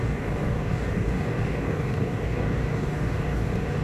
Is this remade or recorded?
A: remade